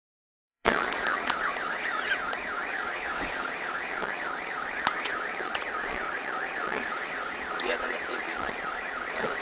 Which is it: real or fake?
fake